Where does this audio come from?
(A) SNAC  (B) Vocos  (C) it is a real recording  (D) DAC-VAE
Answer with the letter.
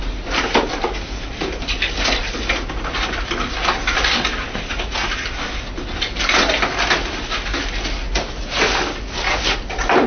C